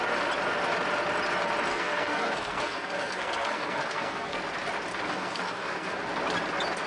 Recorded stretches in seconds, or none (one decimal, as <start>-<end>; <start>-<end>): 0.0-1.7; 4.4-4.9; 6.0-6.9

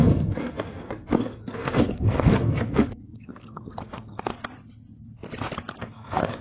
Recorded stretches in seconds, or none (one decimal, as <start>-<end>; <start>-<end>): 4.3-5.8